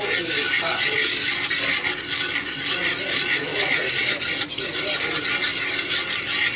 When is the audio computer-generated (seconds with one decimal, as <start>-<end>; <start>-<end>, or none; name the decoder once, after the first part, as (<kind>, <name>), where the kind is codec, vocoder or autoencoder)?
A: 3.5-5.2 (vocoder, Vocos)